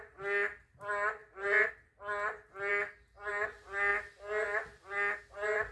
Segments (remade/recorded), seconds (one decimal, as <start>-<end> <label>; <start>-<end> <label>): 0.0-5.7 recorded